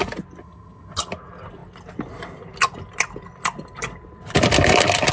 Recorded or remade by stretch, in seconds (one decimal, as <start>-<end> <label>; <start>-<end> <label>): 0.0-0.4 recorded; 0.4-1.0 remade; 1.0-5.1 recorded